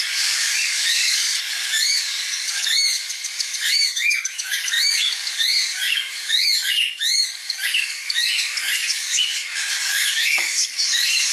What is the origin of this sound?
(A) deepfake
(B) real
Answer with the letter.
A